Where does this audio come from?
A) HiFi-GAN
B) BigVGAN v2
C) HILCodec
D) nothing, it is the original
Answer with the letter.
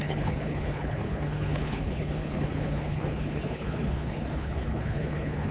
C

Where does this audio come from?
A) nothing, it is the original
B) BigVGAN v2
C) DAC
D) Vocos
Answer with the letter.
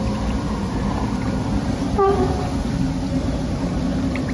A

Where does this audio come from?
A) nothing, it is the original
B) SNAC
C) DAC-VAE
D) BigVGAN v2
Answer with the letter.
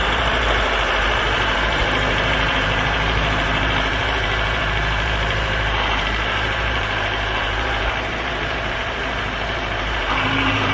D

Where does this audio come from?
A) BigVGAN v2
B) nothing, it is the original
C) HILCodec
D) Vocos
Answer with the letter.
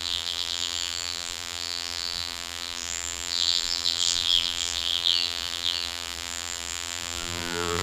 A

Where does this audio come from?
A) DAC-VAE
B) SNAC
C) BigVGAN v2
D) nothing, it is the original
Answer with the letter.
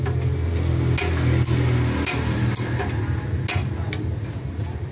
D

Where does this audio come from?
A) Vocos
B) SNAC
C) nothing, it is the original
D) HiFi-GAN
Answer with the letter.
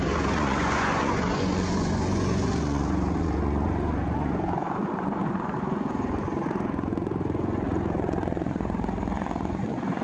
A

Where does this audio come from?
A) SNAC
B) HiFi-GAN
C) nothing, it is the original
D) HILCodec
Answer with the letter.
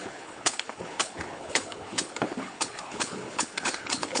D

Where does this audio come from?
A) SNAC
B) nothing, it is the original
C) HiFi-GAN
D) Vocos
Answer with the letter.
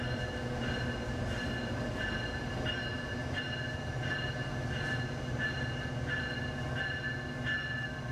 B